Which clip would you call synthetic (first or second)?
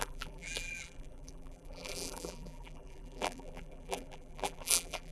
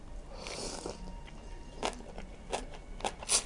first